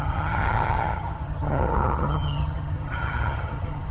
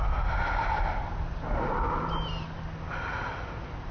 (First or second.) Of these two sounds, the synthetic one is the first